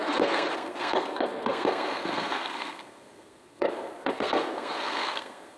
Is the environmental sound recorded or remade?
remade